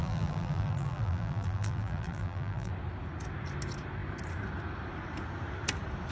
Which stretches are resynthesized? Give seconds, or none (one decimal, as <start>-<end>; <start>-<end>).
0.0-2.7

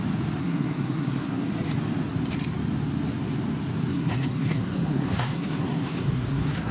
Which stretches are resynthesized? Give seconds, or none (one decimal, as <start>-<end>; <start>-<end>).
0.4-1.5; 3.9-6.7

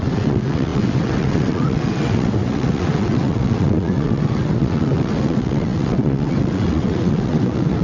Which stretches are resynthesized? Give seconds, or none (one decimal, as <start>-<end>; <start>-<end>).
0.0-7.8

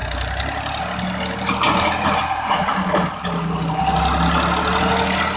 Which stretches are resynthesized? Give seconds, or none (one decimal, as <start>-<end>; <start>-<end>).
none